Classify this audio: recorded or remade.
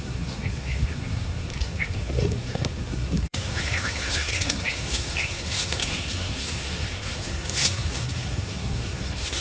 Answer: remade